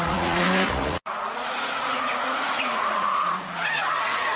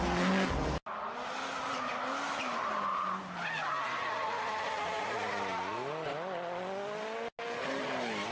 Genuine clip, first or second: second